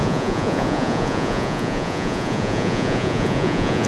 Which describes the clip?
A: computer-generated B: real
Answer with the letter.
A